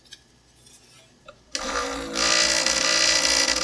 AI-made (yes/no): no